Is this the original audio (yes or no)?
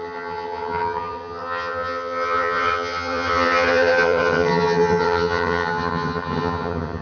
no